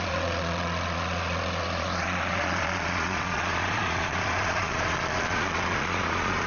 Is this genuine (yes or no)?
no